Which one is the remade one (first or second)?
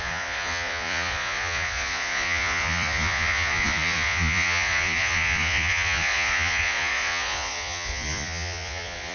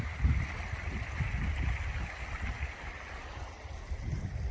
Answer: first